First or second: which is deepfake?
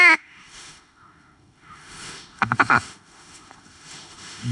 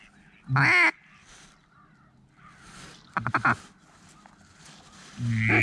first